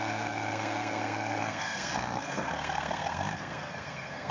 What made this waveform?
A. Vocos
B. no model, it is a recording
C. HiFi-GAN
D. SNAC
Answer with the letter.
D